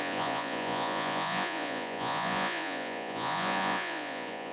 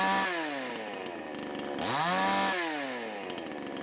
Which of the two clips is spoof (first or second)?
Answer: first